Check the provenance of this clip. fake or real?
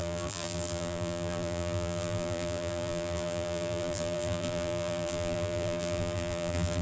fake